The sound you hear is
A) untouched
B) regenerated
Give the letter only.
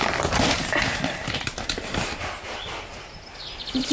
A